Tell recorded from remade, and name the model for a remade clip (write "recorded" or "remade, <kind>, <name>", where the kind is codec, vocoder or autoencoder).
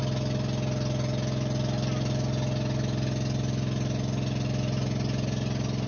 recorded